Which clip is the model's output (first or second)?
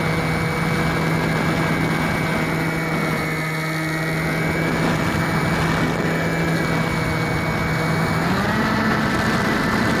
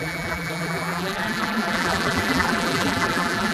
second